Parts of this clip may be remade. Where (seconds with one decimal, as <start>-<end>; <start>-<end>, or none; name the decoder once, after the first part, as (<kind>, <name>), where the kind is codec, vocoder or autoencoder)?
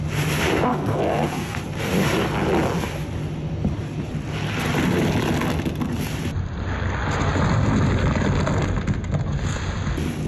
0.7-1.6 (codec, SNAC)